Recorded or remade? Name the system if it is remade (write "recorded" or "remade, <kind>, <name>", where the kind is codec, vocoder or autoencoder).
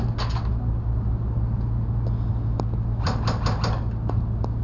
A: recorded